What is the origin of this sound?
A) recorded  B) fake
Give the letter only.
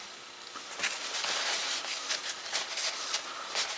A